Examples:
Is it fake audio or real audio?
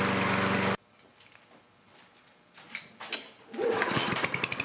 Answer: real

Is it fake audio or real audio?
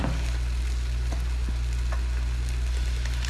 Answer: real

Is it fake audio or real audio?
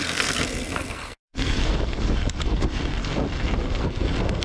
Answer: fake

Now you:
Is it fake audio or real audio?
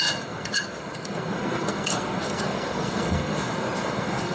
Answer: fake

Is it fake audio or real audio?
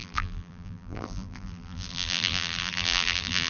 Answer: fake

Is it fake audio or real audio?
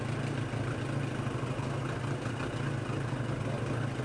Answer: real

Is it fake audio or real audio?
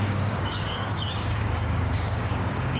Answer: fake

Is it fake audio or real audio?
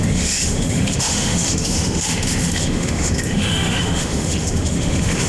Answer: fake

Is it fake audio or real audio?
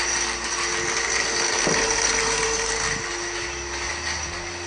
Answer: real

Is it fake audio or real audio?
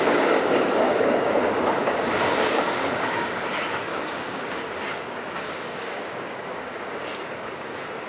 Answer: fake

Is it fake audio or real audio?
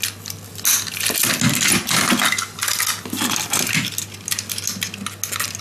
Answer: real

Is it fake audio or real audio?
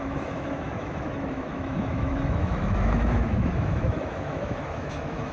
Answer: fake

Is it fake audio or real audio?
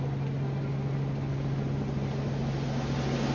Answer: real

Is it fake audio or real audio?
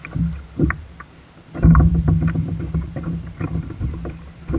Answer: real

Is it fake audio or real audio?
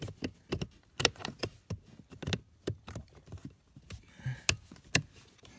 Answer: real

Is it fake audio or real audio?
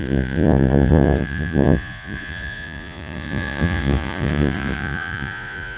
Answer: fake